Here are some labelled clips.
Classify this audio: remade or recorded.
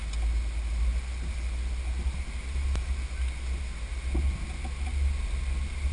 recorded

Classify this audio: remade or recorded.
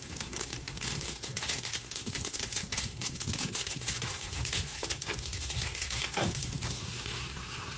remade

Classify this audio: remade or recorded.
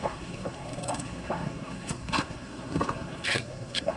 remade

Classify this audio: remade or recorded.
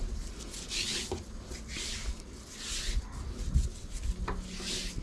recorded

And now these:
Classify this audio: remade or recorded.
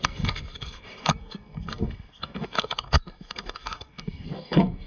remade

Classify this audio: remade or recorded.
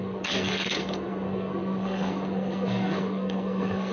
remade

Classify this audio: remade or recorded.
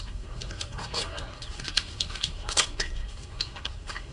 remade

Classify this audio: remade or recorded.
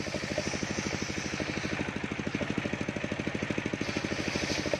recorded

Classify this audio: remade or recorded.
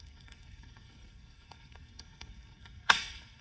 remade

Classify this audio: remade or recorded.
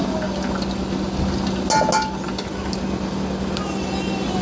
recorded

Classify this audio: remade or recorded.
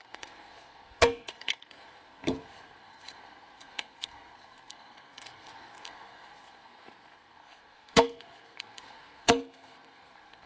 remade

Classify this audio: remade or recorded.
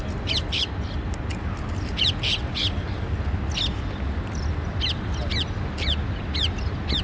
recorded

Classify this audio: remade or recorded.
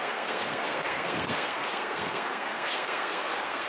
remade